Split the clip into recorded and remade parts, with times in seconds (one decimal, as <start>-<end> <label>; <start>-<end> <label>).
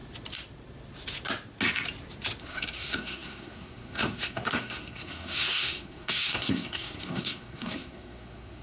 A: 0.0-2.4 recorded; 2.4-8.6 remade